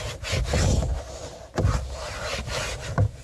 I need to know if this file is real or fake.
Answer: real